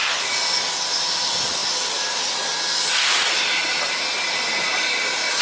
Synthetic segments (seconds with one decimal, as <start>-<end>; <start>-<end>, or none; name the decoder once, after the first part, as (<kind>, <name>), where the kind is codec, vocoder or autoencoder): 1.6-4.0 (vocoder, BigVGAN v2)